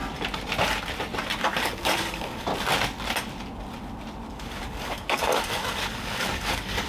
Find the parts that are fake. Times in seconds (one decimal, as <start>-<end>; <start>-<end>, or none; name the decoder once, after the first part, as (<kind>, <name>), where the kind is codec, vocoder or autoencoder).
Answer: 1.4-2.5 (codec, DAC); 4.3-6.9